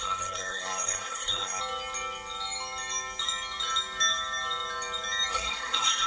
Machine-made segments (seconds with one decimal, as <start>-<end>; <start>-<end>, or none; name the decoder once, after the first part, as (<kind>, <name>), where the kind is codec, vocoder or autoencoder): 0.0-1.6 (codec, SNAC); 5.3-6.1

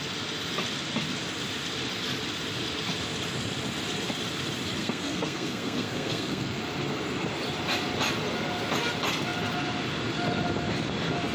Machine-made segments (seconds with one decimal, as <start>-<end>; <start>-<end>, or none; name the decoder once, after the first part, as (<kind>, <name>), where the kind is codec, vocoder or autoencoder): 4.8-6.6 (codec, SNAC)

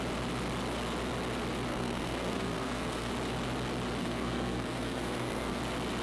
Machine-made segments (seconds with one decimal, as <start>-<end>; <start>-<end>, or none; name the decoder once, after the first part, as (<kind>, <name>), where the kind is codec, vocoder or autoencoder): 1.7-3.1 (codec, SNAC); 4.0-5.6

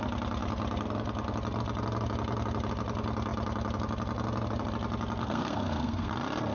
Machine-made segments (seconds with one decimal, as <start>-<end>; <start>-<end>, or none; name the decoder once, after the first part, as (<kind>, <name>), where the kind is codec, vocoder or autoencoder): 5.2-6.1 (codec, SNAC)

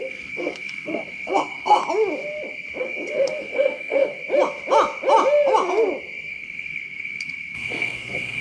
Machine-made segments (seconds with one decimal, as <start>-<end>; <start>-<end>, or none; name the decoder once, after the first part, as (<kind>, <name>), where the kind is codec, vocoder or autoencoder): 0.0-1.8 (codec, SNAC); 2.8-4.2; 6.3-8.4